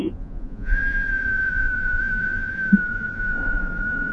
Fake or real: fake